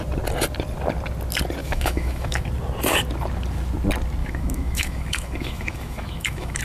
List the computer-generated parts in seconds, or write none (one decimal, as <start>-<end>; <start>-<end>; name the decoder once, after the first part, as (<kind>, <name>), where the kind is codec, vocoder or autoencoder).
1.6-2.5 (autoencoder, DAC-VAE); 4.2-6.6